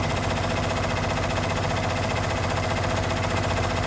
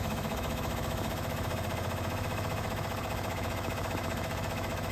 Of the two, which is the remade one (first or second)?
second